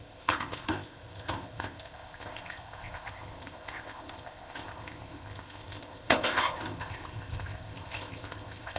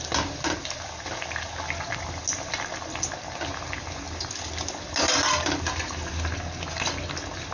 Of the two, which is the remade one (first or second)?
first